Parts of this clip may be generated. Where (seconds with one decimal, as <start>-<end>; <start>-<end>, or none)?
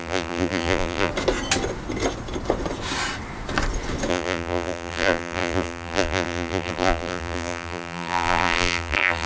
0.0-1.1; 4.1-9.3